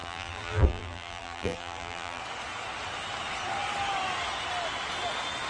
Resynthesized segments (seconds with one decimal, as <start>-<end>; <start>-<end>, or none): 0.0-2.2